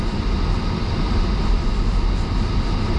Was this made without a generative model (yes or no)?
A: yes